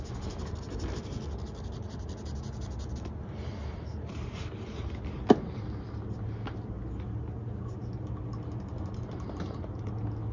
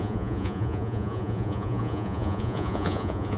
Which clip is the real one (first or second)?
first